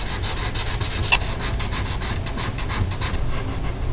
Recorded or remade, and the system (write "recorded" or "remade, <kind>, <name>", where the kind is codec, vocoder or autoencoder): recorded